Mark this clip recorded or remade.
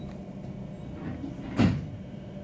recorded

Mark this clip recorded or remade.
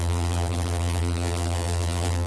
remade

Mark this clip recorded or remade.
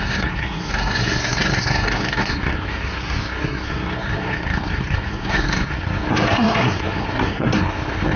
remade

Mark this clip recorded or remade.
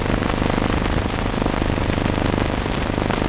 recorded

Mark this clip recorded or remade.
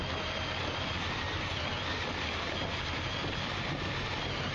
recorded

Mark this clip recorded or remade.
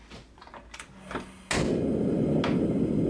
recorded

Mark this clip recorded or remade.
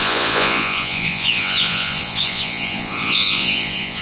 remade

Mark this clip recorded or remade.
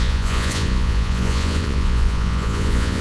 remade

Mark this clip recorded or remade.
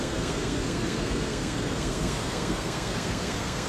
remade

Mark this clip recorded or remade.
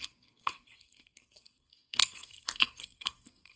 remade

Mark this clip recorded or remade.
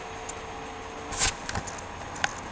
recorded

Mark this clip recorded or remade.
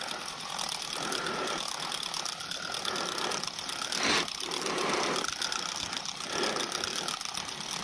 recorded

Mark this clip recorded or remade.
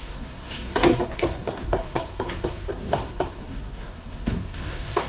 remade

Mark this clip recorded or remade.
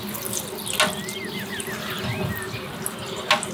recorded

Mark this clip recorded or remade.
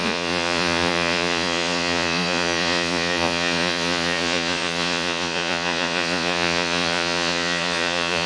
remade